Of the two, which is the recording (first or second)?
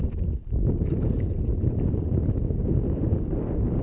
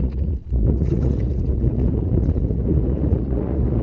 first